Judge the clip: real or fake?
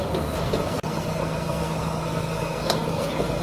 fake